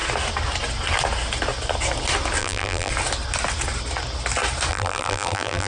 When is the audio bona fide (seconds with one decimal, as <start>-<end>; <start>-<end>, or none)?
0.0-2.4; 2.9-4.7